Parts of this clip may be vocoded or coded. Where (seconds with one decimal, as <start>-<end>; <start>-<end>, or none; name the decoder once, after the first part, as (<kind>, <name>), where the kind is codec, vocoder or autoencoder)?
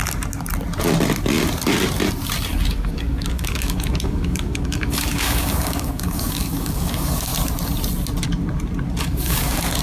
2.7-7.3 (codec, DAC); 9.0-9.8